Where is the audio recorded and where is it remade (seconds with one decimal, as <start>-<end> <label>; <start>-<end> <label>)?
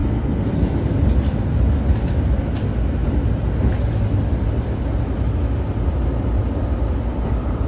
0.0-0.5 remade; 0.5-7.7 recorded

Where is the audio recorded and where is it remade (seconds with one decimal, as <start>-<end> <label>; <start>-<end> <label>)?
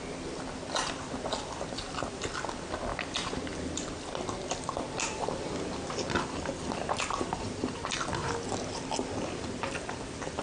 0.0-10.4 recorded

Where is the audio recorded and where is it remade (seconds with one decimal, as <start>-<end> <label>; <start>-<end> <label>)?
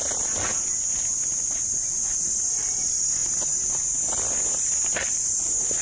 0.0-5.8 recorded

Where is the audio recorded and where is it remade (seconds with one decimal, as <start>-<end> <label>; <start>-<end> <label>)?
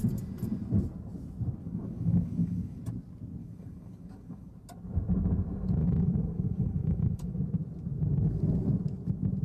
0.0-1.6 recorded; 1.6-2.8 remade; 2.8-3.4 recorded; 3.4-4.5 remade; 4.5-5.8 recorded; 5.8-7.4 remade; 7.4-9.4 recorded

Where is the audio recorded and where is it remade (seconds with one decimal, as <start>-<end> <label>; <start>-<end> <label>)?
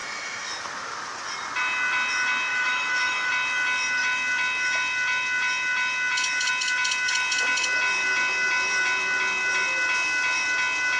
0.0-0.5 remade; 0.5-2.5 recorded; 2.5-3.3 remade; 3.3-11.0 recorded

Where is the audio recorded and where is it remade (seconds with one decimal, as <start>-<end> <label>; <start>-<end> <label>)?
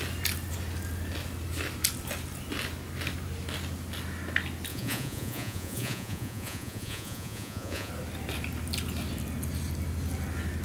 0.0-4.7 recorded; 4.7-7.9 remade; 7.9-10.6 recorded